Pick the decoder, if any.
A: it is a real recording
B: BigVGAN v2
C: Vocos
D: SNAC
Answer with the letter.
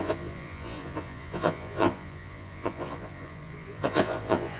C